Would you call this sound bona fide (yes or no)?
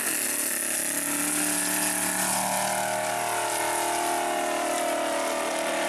yes